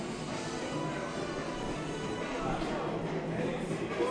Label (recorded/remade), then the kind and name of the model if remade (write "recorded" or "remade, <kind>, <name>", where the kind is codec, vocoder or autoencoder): recorded